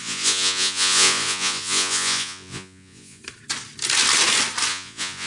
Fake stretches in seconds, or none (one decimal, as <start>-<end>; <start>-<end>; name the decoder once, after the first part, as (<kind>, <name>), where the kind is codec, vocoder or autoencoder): 0.0-3.2 (vocoder, Vocos); 4.7-5.3